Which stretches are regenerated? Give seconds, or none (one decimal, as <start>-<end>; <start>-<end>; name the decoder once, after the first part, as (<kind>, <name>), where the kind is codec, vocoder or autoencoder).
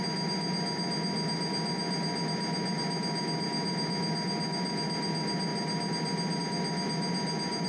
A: none